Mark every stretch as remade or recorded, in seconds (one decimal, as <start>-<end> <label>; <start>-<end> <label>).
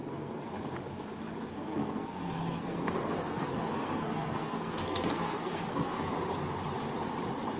0.0-0.5 remade; 0.5-1.5 recorded; 1.5-6.1 remade; 6.1-7.6 recorded